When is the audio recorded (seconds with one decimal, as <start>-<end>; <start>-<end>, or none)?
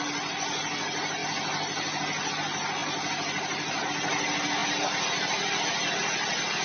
0.0-6.6